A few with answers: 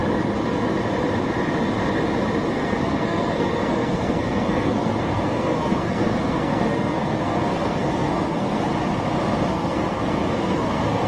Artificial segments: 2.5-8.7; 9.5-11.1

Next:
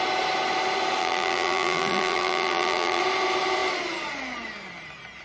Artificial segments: 1.0-3.0

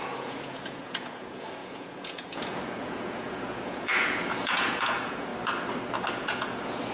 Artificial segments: 0.0-5.3; 6.1-6.9

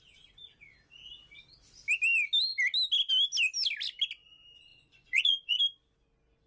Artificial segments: 4.7-5.6

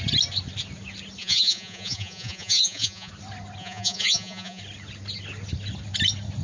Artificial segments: 1.2-3.1; 3.6-4.6

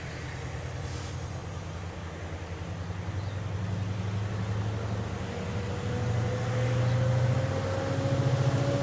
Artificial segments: none

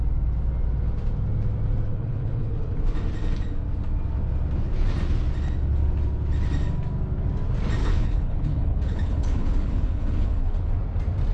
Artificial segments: 1.9-2.8; 7.8-10.7